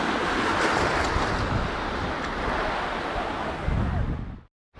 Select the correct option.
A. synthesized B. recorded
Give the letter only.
B